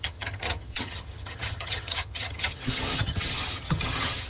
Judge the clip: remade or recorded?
remade